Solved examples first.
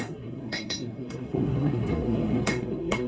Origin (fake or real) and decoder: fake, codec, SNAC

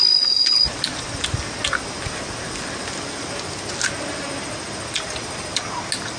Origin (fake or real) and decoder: real